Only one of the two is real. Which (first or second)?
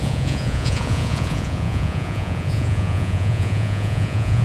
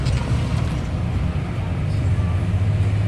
second